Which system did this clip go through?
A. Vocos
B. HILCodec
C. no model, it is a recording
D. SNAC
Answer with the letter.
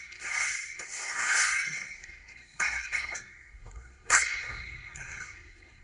D